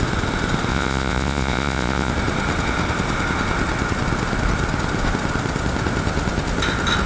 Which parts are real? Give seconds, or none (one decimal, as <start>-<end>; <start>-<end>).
0.0-0.7; 2.1-7.1